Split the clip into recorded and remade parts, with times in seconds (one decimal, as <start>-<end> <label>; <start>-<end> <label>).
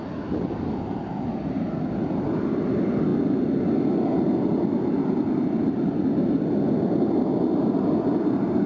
0.0-8.7 recorded